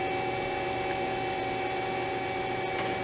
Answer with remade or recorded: recorded